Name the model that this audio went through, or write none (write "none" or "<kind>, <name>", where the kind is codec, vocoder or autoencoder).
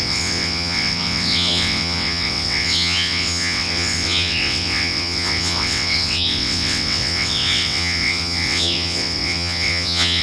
vocoder, WaveNeXt